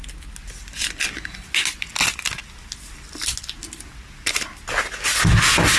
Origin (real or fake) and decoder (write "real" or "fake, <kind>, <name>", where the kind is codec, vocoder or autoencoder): real